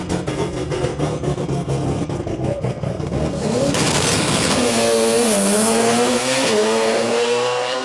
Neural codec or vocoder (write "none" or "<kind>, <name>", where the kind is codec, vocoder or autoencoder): codec, SNAC